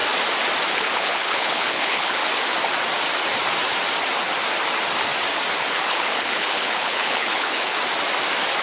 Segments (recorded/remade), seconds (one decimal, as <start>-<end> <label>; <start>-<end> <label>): 0.0-0.7 recorded; 0.7-2.2 remade; 2.2-5.6 recorded; 5.6-7.8 remade; 7.8-8.6 recorded